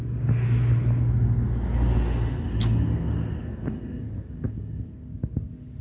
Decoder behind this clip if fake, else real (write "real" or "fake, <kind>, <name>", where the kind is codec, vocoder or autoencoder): real